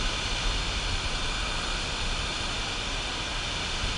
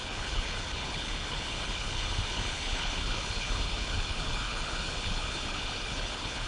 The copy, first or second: second